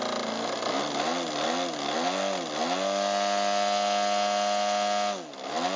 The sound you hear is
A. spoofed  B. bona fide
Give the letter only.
B